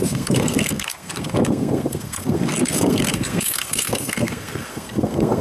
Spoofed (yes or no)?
yes